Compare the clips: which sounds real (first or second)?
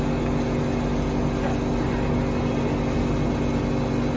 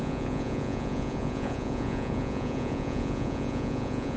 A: first